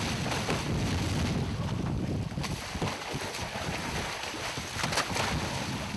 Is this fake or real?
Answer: real